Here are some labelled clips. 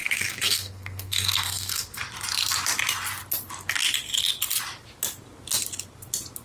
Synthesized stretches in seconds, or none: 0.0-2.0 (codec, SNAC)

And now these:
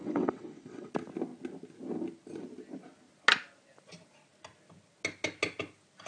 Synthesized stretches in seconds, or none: 0.0-0.9 (vocoder, WaveNeXt)

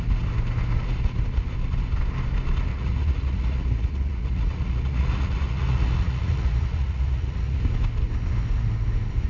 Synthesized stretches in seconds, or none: 2.7-7.6 (vocoder, Vocos)

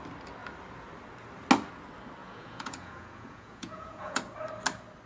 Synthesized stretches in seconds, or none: 2.2-4.2 (vocoder, Vocos)